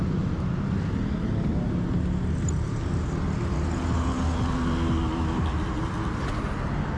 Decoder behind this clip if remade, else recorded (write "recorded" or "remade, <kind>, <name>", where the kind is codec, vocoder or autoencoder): recorded